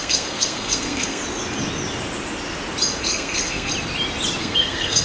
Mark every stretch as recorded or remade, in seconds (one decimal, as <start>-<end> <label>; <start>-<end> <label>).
0.0-1.2 remade; 1.2-3.0 recorded; 3.0-3.7 remade; 3.7-4.4 recorded; 4.4-5.0 remade